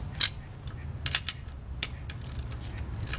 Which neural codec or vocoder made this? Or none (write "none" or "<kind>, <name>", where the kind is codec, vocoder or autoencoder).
none